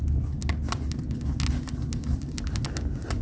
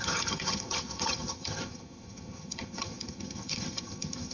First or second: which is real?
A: first